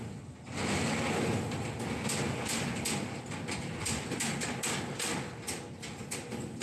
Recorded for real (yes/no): yes